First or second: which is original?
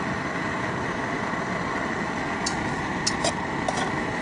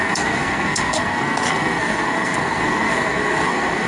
first